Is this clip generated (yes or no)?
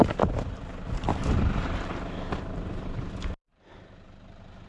yes